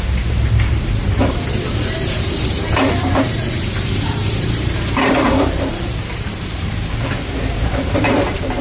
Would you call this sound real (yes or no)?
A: no